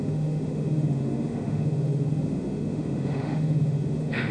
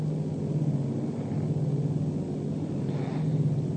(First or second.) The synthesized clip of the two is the first